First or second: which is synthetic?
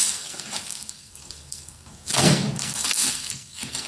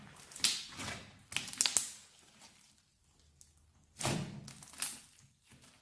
first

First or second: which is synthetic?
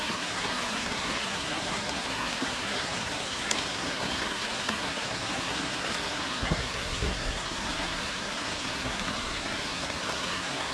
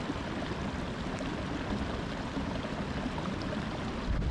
first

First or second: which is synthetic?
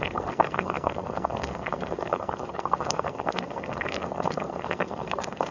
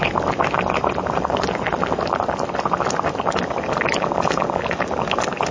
first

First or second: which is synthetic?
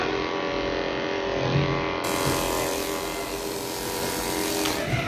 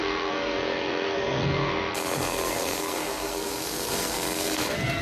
second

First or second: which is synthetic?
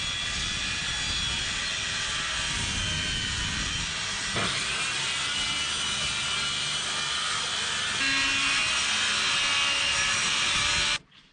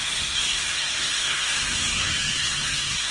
second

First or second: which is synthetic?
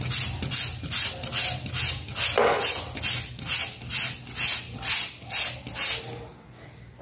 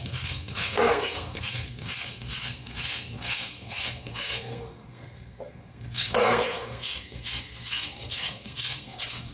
second